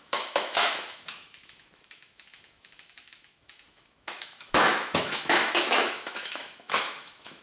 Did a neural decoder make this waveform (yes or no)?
yes